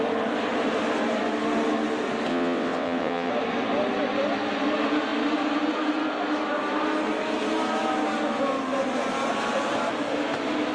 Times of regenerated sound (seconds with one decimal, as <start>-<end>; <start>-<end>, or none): 2.3-3.3